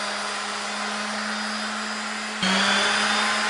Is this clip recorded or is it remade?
recorded